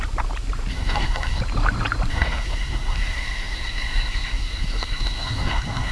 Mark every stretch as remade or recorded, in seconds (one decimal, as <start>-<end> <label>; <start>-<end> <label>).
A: 0.0-0.7 recorded; 0.7-1.4 remade; 1.4-2.1 recorded; 2.1-5.9 remade